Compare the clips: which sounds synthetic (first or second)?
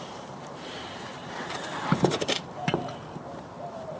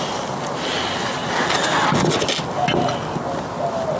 first